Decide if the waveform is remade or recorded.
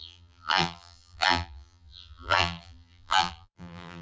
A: remade